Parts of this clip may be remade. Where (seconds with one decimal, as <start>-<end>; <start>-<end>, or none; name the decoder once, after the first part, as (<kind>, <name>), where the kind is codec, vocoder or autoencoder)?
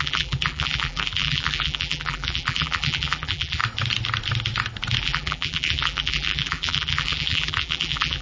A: 0.0-3.6 (vocoder, BigVGAN v2); 5.0-8.2